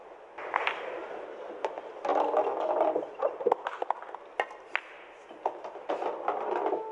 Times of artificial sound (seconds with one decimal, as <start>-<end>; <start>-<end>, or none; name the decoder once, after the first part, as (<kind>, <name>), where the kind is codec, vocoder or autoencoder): none

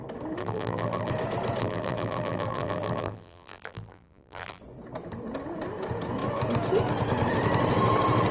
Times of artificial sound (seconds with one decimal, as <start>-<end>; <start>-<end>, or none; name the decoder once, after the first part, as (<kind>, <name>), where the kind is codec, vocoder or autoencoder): 0.4-1.1 (vocoder, BigVGAN v2); 1.6-4.6

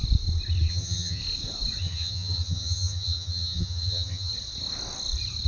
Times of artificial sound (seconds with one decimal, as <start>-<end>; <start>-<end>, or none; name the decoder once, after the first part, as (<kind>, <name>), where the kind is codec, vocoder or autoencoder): 0.7-1.2 (vocoder, HiFi-GAN); 1.8-4.3

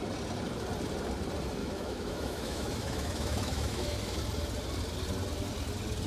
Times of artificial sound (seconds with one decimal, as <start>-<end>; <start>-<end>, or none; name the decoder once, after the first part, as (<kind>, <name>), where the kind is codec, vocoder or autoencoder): 1.6-4.2 (autoencoder, DAC-VAE)

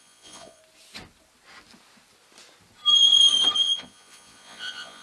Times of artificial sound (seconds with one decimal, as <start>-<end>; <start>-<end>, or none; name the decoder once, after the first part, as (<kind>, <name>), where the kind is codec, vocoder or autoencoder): 0.0-0.6 (vocoder, Vocos); 3.6-5.0

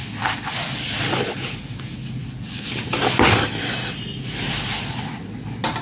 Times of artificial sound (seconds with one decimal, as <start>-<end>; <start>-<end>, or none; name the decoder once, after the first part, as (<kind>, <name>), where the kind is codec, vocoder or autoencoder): none

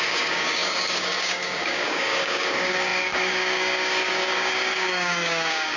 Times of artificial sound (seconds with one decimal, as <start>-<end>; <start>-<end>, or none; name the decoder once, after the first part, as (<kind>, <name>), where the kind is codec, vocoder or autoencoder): 0.0-5.8 (codec, DAC)

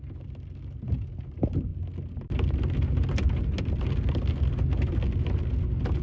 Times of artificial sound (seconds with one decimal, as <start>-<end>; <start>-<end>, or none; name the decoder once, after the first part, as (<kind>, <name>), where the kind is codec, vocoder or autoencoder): none